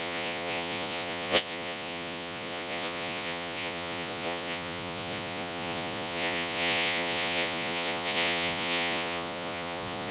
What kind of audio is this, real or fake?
fake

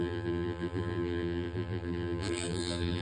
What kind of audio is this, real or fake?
fake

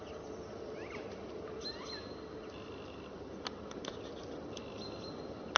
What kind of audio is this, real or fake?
real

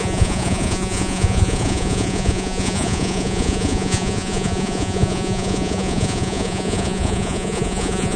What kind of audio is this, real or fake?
fake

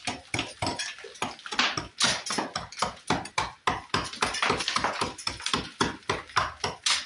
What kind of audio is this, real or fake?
real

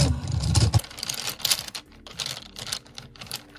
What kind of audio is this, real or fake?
real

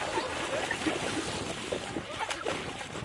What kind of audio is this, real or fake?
real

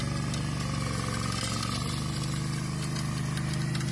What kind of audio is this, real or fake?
fake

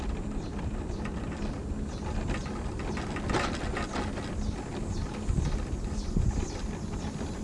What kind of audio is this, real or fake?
real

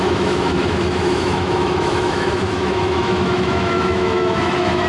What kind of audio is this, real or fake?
fake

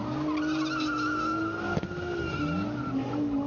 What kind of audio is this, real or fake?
real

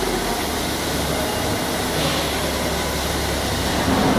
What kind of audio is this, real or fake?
real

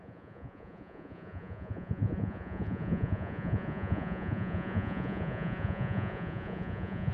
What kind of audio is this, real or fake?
fake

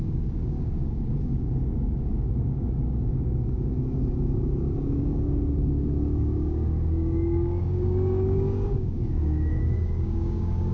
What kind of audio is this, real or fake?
fake